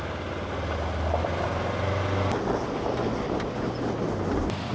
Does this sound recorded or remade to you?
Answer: recorded